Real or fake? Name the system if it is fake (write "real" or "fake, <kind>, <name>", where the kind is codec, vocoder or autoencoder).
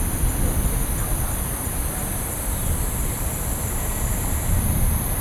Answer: fake, vocoder, BigVGAN v2